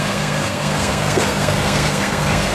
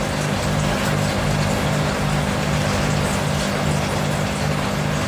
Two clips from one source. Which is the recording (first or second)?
second